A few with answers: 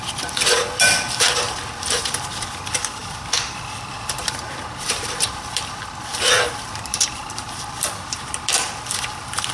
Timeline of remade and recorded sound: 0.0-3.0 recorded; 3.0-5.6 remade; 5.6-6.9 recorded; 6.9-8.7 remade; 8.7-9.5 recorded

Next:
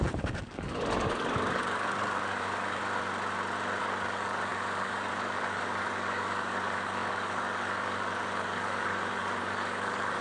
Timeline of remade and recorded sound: 0.0-2.8 remade; 2.8-3.8 recorded; 3.8-10.2 remade

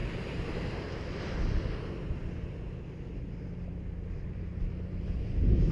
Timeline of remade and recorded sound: 0.0-3.4 recorded; 3.4-5.7 remade